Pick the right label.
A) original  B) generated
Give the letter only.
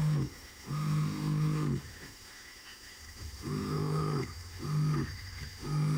B